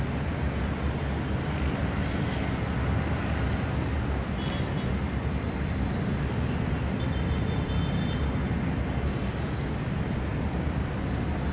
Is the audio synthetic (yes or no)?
no